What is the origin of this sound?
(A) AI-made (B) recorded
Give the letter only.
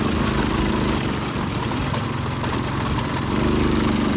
A